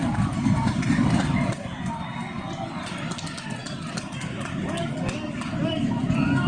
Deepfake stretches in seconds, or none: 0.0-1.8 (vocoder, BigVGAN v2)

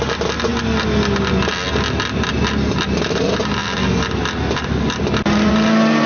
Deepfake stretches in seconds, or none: none

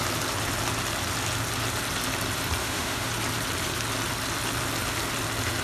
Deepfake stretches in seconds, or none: 2.6-3.1 (autoencoder, DAC-VAE)

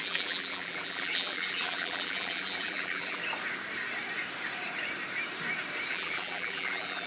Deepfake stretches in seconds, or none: 0.0-3.2 (vocoder, BigVGAN v2); 5.9-7.1

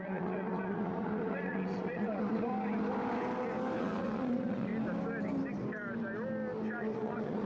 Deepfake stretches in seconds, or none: 0.0-2.5 (vocoder, Vocos); 3.8-4.7; 6.8-7.4